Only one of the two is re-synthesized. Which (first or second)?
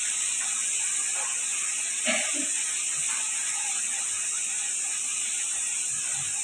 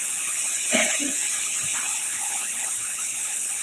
second